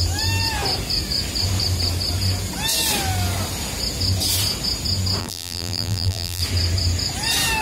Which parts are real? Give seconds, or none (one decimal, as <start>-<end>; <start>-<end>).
0.0-5.2; 6.4-7.6